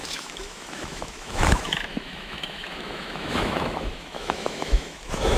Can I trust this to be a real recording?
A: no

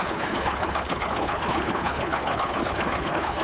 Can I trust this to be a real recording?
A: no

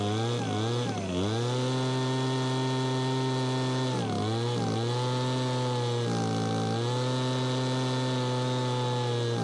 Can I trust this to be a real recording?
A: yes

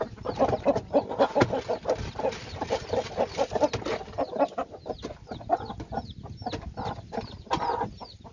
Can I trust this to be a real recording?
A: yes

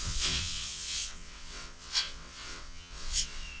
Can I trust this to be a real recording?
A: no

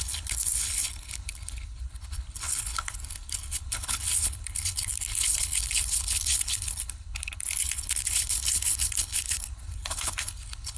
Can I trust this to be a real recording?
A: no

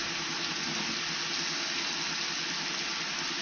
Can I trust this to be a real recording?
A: yes